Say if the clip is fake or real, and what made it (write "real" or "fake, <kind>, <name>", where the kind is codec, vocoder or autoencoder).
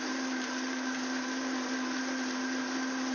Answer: real